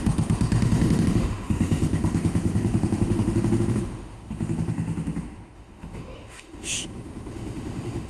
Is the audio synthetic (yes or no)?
yes